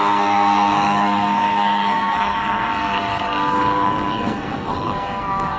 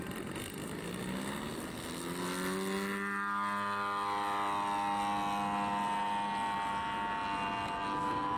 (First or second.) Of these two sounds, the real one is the second